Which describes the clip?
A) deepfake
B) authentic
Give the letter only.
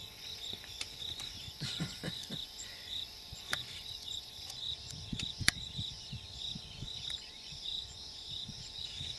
A